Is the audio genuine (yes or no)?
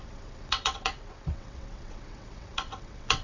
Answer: no